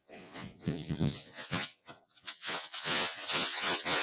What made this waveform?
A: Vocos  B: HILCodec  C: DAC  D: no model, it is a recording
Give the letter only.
A